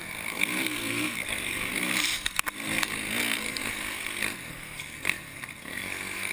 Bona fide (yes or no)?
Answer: no